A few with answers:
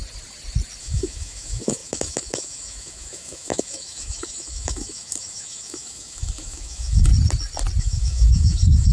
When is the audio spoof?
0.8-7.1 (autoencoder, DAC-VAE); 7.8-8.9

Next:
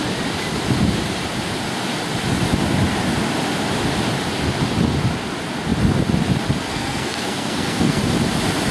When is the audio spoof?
6.7-8.0 (codec, SNAC)

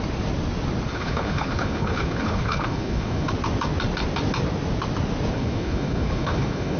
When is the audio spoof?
0.9-3.3 (codec, HILCodec); 5.3-6.8

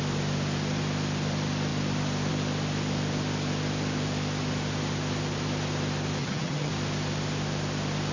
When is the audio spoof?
6.2-6.7 (vocoder, HiFi-GAN)

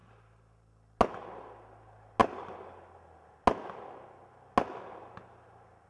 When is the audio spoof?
none

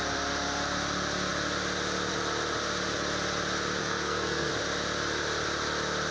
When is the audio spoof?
3.8-4.5 (codec, SNAC)